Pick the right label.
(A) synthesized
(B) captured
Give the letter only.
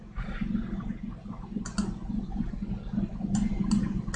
B